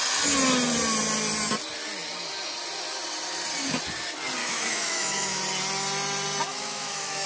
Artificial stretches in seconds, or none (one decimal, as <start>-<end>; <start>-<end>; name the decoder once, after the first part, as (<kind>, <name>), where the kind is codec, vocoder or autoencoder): 4.4-5.4 (autoencoder, DAC-VAE); 6.5-7.3